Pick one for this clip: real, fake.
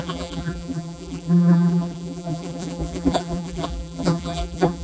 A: fake